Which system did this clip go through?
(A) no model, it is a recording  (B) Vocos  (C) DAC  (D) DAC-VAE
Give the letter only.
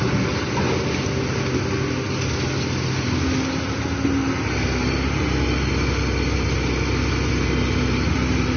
A